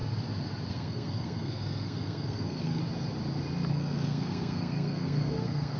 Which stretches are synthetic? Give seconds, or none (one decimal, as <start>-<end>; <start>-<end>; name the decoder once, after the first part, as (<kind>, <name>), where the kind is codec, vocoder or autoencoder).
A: 0.7-2.8 (codec, SNAC); 3.7-5.8